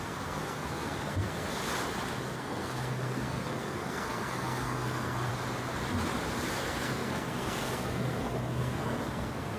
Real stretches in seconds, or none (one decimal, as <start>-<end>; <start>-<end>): 1.6-2.2; 5.3-6.6